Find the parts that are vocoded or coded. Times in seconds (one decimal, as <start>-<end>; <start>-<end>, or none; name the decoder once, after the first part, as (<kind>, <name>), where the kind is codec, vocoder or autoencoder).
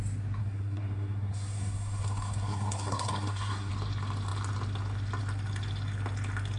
0.4-3.7 (codec, SNAC)